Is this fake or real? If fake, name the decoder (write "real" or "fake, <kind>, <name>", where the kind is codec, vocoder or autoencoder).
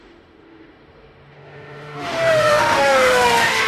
fake, autoencoder, DAC-VAE